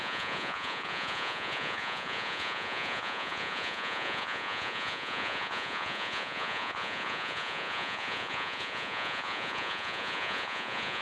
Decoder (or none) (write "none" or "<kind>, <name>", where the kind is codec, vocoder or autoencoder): vocoder, Vocos